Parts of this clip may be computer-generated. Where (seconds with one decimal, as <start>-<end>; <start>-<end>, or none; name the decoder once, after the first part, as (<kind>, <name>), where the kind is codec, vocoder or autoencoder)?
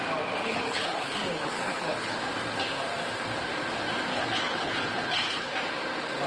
0.4-2.2 (codec, HILCodec); 4.1-5.5